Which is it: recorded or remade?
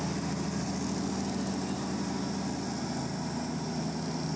recorded